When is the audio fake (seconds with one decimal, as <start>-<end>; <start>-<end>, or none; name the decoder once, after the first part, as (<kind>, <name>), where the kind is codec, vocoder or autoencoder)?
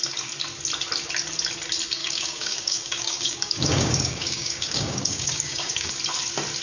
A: 2.0-5.9 (codec, DAC)